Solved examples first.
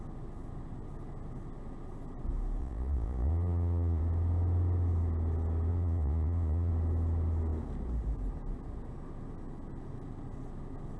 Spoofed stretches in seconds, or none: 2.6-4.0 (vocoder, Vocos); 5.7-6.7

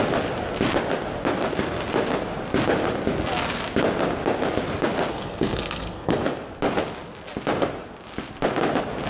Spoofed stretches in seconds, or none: 5.1-6.2 (codec, SNAC)